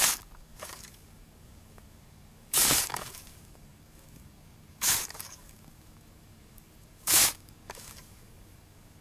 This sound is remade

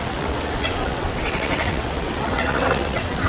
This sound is remade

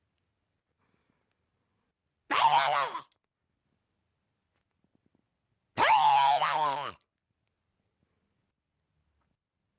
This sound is recorded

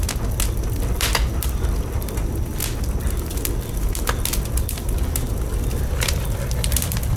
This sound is recorded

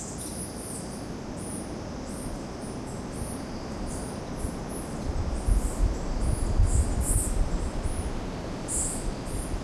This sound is recorded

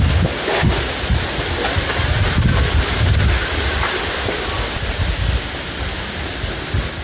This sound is recorded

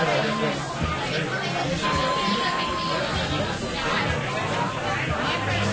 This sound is recorded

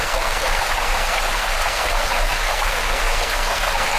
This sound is remade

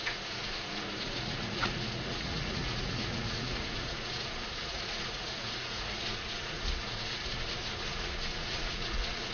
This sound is remade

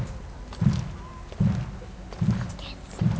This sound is recorded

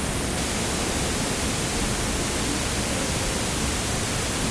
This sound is recorded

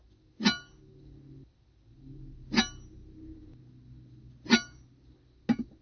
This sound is recorded